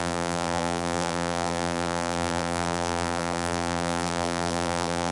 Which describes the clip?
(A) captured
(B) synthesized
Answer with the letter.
B